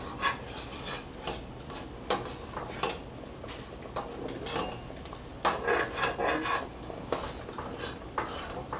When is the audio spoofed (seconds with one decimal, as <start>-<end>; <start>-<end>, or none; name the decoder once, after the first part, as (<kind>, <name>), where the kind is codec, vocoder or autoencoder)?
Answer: none